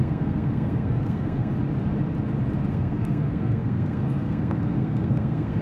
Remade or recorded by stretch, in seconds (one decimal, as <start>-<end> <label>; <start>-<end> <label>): 0.0-1.5 remade; 1.5-2.7 recorded; 2.7-5.6 remade